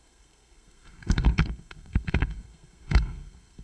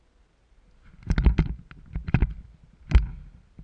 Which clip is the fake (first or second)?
first